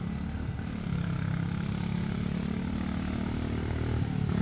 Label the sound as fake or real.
real